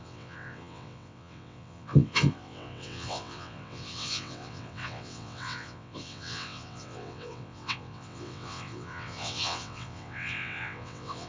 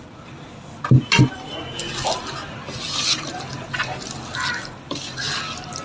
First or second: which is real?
second